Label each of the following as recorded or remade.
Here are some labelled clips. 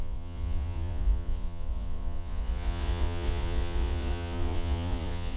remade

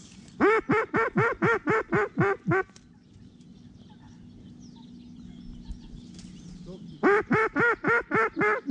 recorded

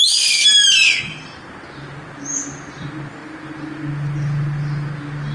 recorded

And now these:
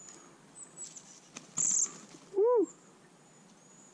recorded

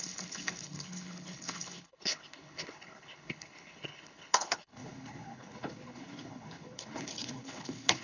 remade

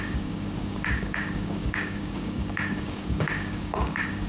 remade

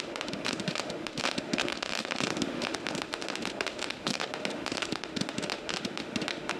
remade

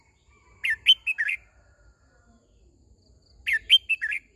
recorded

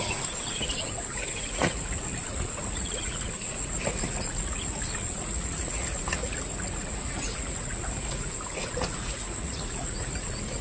remade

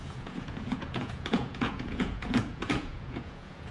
remade